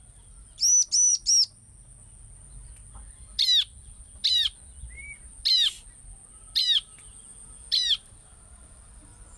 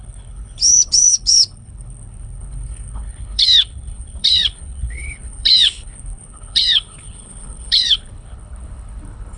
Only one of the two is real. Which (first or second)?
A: first